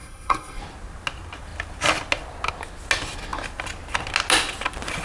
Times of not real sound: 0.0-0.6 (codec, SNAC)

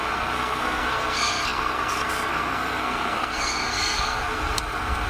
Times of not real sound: 0.0-5.1 (codec, SNAC)